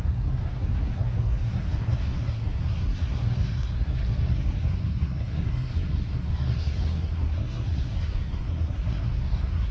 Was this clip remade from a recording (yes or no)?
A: yes